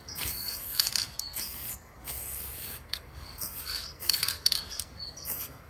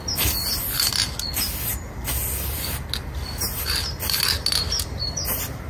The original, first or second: second